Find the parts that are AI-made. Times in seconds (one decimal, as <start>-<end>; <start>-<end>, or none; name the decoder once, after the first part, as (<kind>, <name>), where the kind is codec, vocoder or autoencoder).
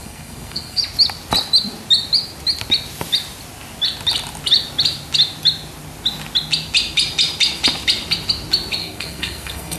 0.0-0.8 (codec, SNAC); 8.8-9.8